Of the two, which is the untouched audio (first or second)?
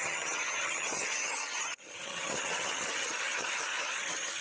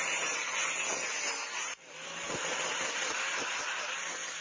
second